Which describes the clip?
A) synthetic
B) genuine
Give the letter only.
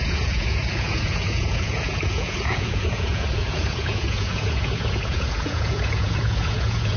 A